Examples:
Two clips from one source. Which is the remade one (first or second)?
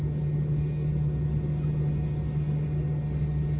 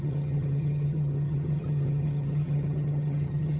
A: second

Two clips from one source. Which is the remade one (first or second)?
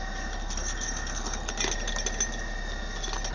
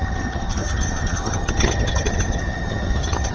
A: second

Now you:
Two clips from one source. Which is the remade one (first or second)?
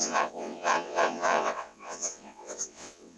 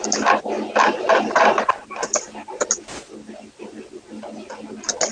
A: first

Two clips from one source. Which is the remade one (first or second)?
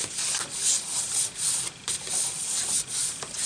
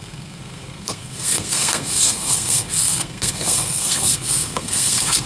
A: second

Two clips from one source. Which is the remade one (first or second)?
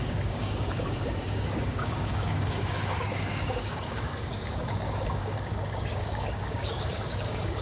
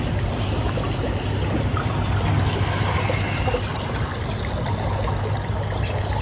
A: first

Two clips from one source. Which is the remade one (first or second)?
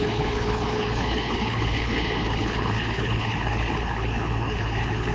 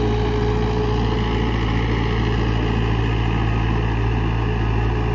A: first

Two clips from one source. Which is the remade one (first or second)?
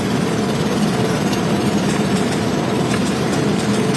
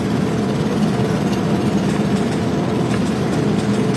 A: first